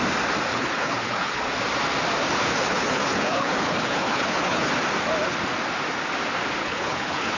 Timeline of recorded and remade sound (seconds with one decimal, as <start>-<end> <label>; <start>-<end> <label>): 0.0-0.5 recorded; 0.5-1.5 remade; 1.5-2.7 recorded; 2.7-4.7 remade; 4.7-6.6 recorded; 6.6-7.4 remade